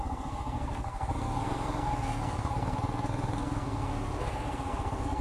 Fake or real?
fake